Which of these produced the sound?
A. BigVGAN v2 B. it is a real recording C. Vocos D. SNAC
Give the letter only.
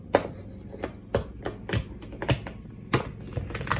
B